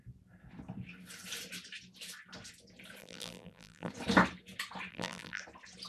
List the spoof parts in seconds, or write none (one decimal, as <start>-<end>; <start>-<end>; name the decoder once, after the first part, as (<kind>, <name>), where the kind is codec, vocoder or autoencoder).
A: 3.0-3.9 (vocoder, BigVGAN v2); 4.9-5.4